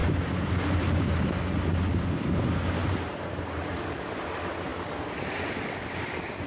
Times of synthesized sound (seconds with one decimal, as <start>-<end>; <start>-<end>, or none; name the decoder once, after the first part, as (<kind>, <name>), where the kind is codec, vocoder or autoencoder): 0.0-1.2 (vocoder, BigVGAN v2); 2.8-3.8